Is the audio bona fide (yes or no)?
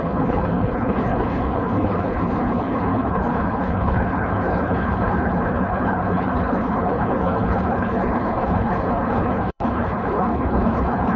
no